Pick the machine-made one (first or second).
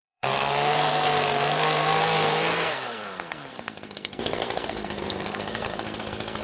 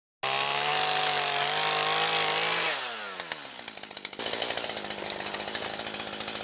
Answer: first